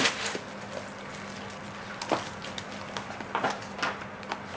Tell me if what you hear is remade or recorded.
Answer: recorded